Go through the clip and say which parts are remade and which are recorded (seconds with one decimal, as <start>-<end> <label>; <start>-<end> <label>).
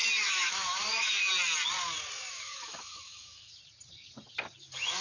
0.0-1.3 remade; 1.3-2.3 recorded; 2.3-3.6 remade; 3.6-4.6 recorded; 4.6-5.0 remade